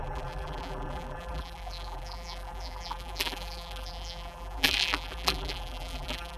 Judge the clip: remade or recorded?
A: remade